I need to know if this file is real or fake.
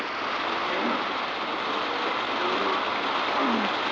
real